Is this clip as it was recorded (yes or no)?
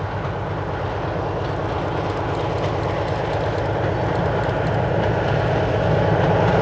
yes